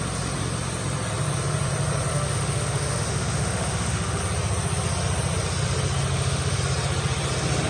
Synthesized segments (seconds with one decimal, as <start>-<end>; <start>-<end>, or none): 2.1-4.2; 6.1-6.6

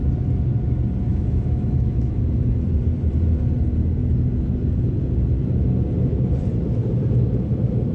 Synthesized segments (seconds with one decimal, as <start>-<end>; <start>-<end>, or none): 1.1-2.2

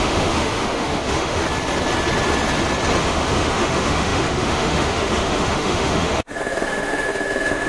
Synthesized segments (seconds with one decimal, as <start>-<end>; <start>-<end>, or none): 0.0-1.4; 3.0-7.7

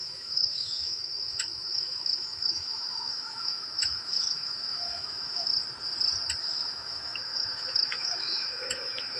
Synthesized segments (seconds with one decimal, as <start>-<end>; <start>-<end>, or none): 0.0-5.5; 6.4-9.2

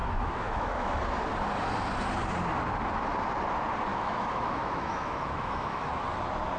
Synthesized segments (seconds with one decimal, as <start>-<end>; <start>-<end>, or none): 0.0-1.0; 3.9-5.9

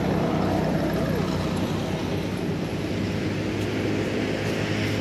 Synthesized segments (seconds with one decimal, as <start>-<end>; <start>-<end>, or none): none

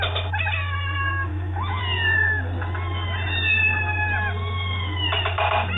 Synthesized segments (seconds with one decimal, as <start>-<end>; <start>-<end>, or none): 1.3-1.8

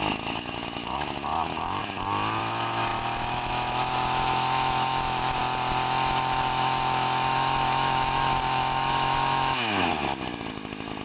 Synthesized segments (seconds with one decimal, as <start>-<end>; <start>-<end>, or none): 0.0-1.8; 2.4-5.4; 6.1-9.9; 10.5-11.0